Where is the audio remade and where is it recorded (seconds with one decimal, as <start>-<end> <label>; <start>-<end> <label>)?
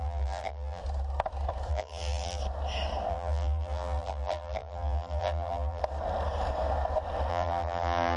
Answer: 0.0-0.8 remade; 0.8-1.7 recorded; 1.7-2.4 remade; 2.4-3.1 recorded; 3.1-5.8 remade; 5.8-7.3 recorded; 7.3-8.2 remade